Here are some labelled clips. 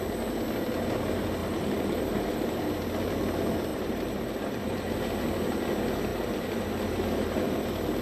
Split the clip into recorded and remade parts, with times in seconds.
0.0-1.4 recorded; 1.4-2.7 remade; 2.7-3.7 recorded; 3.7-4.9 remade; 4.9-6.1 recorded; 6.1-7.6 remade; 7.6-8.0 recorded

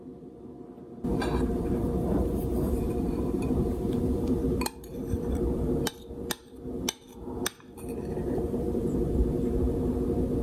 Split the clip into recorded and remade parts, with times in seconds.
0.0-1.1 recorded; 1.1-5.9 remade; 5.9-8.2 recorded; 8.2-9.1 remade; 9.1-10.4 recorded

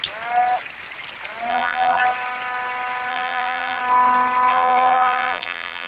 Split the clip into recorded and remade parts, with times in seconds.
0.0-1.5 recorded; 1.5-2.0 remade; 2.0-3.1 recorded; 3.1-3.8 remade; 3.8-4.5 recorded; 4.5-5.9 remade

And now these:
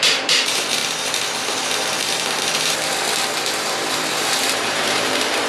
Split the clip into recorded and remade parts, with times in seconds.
0.0-0.8 remade; 0.8-4.1 recorded; 4.1-5.5 remade